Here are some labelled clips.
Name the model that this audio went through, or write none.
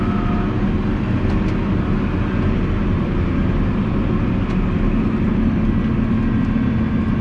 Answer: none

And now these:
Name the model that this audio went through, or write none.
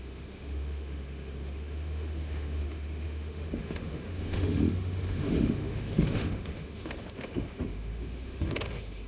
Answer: autoencoder, DAC-VAE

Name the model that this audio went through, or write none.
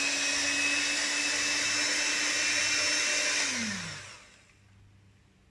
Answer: none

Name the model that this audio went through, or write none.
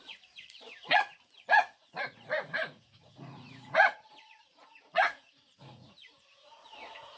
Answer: vocoder, Vocos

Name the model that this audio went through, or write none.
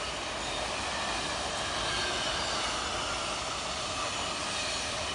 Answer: none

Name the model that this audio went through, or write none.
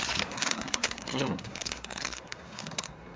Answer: codec, SNAC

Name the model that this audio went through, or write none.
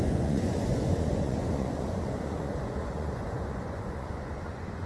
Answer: vocoder, Vocos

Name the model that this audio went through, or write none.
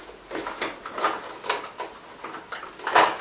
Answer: none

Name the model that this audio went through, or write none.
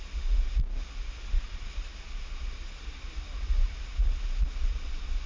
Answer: none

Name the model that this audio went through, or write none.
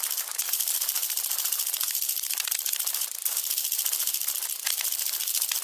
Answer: vocoder, BigVGAN v2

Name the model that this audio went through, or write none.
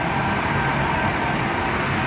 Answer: none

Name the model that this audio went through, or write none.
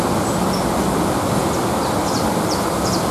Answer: none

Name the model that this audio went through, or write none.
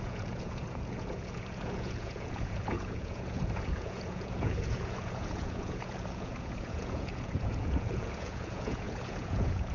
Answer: vocoder, Vocos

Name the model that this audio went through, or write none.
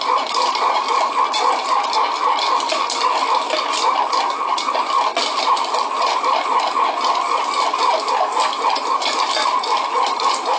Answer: none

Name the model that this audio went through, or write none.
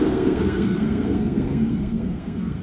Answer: codec, SNAC